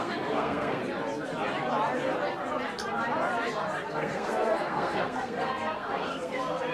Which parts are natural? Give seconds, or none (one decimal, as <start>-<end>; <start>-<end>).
0.8-3.9

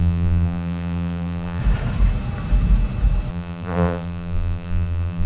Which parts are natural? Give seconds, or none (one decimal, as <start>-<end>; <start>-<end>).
1.6-3.3

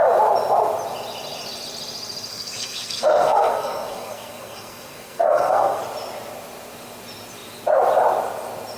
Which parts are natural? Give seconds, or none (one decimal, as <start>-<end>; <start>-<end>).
0.0-2.3; 5.8-8.8

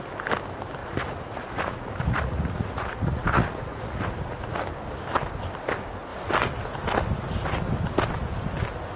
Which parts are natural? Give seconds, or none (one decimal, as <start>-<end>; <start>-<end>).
0.0-0.8; 4.6-9.0

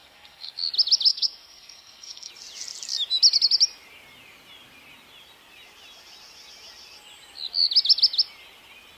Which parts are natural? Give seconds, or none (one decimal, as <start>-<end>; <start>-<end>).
0.7-1.1; 2.3-9.0

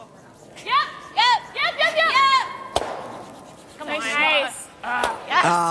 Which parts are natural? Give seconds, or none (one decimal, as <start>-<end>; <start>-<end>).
0.0-5.7

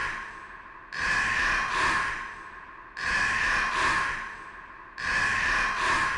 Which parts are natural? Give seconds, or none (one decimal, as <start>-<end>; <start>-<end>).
0.0-5.3

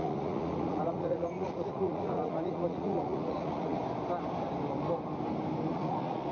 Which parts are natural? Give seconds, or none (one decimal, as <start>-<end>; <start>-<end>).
3.8-5.7